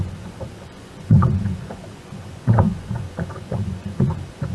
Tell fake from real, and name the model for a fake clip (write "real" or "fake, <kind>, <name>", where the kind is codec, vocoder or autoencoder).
fake, vocoder, Vocos